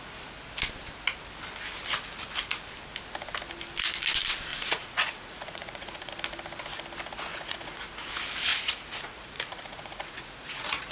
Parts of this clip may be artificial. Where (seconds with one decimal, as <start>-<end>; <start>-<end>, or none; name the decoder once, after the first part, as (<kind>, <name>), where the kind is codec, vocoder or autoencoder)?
4.5-6.1 (vocoder, Vocos); 7.3-7.8; 8.5-10.9